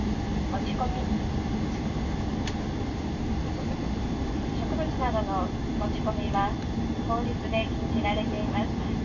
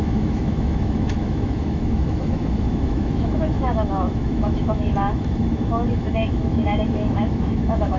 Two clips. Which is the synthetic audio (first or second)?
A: second